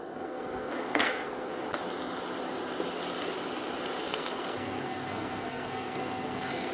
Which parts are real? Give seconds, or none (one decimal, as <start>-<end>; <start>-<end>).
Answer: 1.5-4.0